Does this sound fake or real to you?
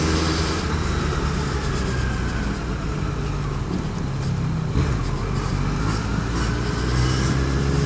real